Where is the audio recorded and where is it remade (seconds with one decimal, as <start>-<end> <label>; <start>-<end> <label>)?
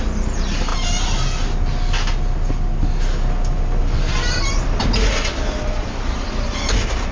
0.0-7.1 recorded